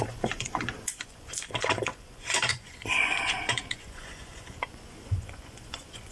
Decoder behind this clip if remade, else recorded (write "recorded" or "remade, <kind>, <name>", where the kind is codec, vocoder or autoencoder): remade, vocoder, Vocos